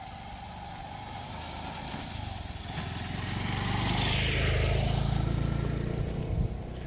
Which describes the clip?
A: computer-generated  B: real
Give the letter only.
B